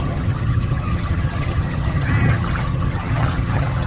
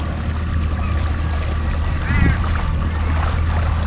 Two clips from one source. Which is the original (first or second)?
second